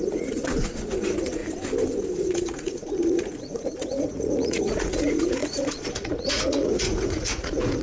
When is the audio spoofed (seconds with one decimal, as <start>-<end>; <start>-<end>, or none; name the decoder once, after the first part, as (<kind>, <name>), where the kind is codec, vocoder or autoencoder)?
0.0-1.4 (vocoder, Vocos); 2.1-7.8